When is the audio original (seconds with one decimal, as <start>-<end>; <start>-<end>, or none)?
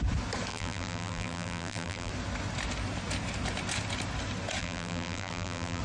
0.0-0.5; 2.1-4.6